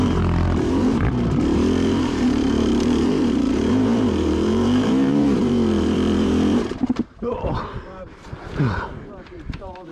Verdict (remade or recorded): remade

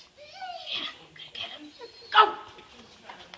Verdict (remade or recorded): recorded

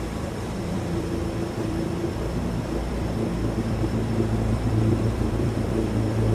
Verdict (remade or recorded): remade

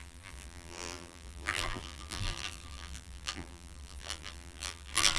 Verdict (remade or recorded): remade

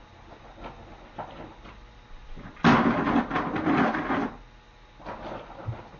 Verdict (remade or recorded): recorded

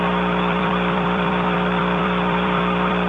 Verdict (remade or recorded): remade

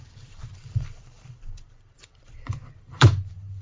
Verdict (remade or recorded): remade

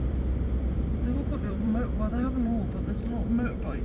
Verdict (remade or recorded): remade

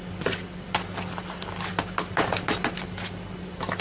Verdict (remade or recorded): remade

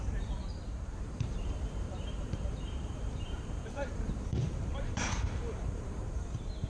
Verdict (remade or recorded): remade